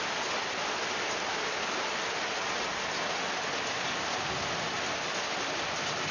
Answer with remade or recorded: recorded